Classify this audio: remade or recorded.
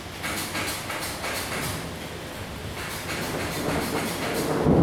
recorded